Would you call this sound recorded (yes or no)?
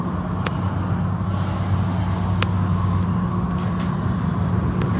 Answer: yes